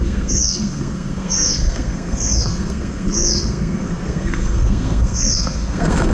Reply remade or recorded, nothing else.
remade